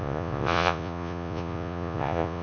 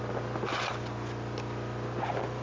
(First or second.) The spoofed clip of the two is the first